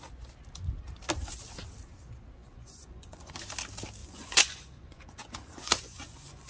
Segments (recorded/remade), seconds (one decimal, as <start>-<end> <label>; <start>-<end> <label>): 0.0-2.4 recorded; 2.4-3.3 remade; 3.3-4.0 recorded; 4.0-6.5 remade